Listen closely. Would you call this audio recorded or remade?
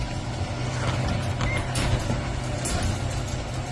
recorded